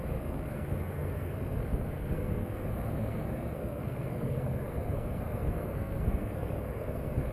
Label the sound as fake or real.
fake